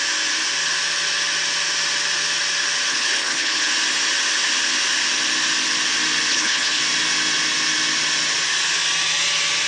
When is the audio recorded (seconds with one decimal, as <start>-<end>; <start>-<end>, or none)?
0.0-2.9; 3.7-6.3; 6.8-9.7